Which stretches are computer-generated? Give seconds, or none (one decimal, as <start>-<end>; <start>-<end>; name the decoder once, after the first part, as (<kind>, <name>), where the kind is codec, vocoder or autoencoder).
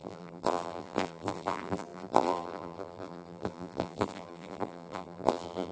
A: 0.0-5.7 (vocoder, BigVGAN v2)